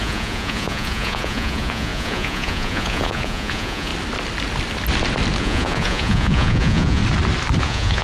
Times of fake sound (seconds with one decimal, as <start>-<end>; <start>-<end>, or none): 0.0-3.9; 5.4-7.0; 7.6-8.0